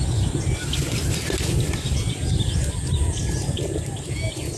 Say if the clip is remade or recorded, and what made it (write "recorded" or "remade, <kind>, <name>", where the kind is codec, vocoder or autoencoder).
recorded